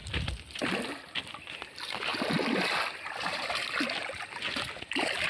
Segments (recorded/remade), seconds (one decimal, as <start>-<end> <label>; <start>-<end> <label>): 0.0-5.3 recorded